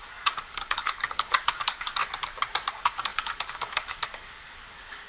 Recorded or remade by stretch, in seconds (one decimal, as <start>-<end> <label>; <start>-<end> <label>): 0.0-2.0 remade; 2.0-2.7 recorded; 2.7-5.1 remade